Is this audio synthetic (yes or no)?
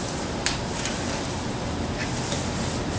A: no